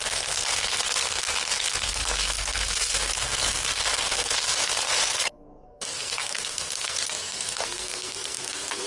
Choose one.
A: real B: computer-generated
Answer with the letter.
B